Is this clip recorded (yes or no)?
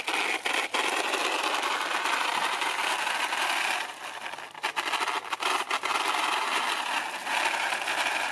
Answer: yes